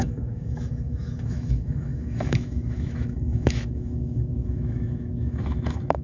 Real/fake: fake